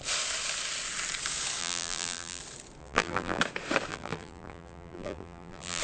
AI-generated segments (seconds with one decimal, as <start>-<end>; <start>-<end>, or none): 1.6-2.4; 2.8-3.4; 3.9-5.8

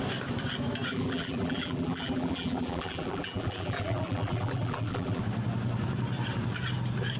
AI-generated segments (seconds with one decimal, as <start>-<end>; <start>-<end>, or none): 0.9-5.2

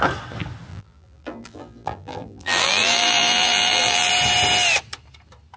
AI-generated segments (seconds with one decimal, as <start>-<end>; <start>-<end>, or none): 0.7-4.1

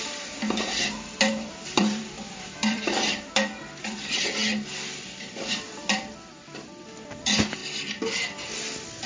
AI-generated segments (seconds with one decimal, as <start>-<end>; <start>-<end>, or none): 0.0-4.4; 5.0-7.6

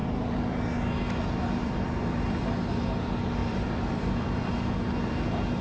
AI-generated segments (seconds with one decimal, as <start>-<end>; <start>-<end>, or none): 1.6-2.8; 3.4-4.7